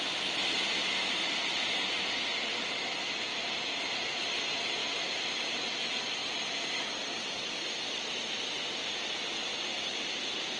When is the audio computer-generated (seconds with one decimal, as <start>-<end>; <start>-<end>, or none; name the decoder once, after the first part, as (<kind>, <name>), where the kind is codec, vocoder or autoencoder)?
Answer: 3.3-3.9 (vocoder, BigVGAN v2); 9.5-10.2

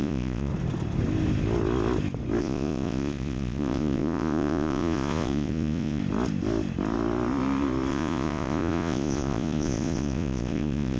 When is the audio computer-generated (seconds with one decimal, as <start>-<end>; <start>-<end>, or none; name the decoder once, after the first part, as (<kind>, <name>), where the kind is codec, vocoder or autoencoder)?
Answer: 0.0-0.5 (vocoder, Vocos); 2.4-6.0; 7.9-11.0